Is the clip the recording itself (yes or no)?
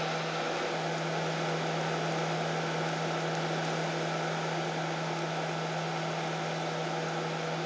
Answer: yes